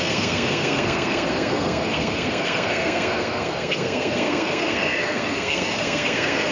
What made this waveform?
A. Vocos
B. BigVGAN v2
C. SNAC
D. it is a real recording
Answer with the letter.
C